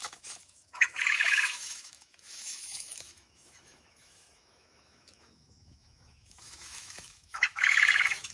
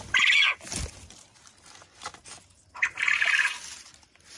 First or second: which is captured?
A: second